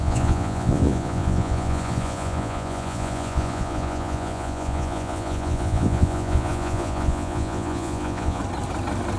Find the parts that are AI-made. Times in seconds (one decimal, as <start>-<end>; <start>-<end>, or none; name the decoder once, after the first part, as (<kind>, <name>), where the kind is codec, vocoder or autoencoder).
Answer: 0.0-8.4 (vocoder, Vocos)